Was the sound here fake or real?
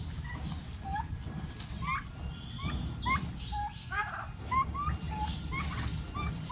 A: real